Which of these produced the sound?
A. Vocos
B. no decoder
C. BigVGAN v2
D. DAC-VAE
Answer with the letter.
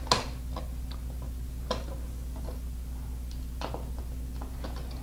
B